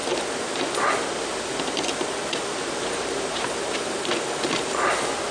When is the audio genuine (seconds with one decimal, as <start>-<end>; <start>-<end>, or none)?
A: none